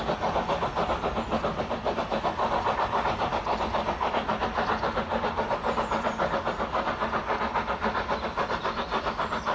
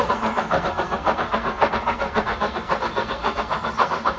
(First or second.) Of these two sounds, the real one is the first